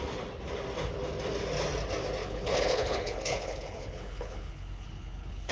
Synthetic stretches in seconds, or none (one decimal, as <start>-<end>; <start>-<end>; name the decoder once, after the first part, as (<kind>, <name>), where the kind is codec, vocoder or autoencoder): 2.2-5.5 (codec, HILCodec)